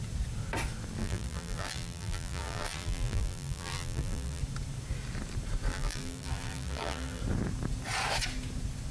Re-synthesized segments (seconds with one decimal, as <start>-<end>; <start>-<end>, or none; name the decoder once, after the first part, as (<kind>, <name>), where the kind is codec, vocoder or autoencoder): 1.0-4.4 (vocoder, BigVGAN v2); 5.7-7.2